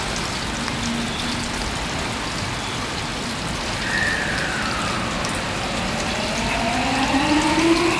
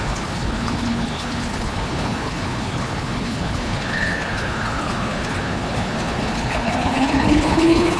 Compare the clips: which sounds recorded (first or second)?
first